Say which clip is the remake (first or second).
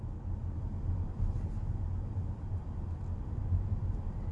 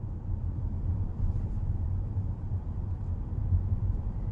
second